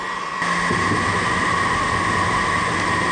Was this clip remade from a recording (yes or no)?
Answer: no